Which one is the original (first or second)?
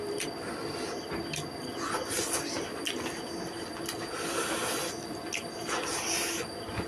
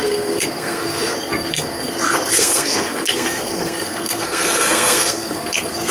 first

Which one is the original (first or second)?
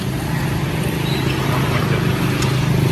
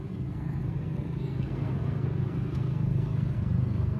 first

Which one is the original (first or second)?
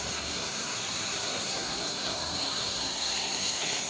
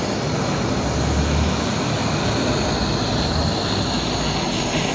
second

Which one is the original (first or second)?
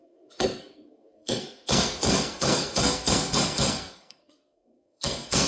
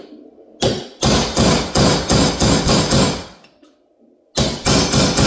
second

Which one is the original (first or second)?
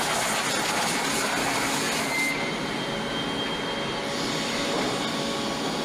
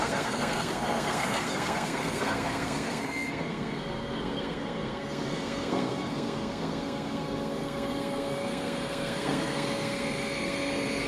first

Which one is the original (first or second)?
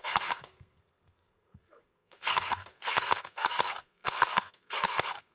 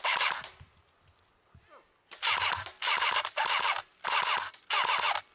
second